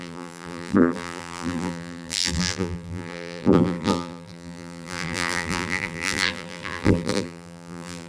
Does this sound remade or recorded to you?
remade